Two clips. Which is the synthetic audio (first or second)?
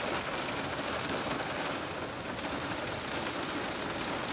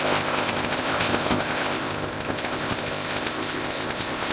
second